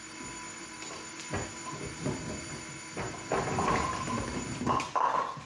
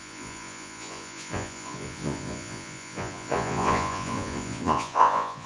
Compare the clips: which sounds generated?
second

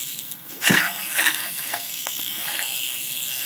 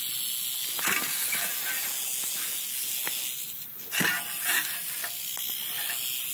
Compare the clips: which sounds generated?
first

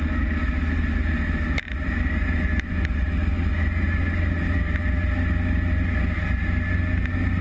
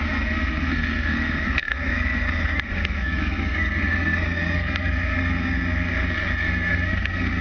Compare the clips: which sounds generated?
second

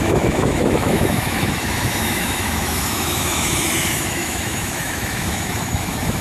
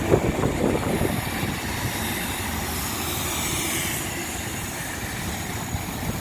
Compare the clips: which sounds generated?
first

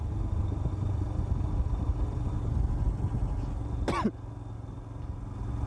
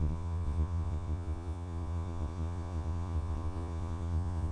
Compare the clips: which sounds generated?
second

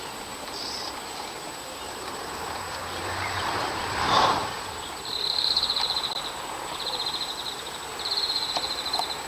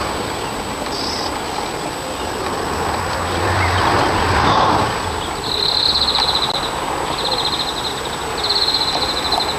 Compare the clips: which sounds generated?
first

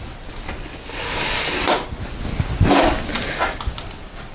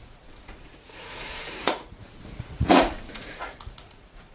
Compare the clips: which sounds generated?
second